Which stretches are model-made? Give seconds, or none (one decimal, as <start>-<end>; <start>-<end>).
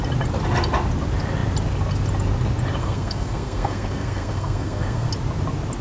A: 2.8-5.1